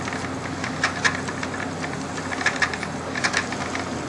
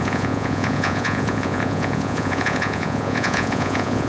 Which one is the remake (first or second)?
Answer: second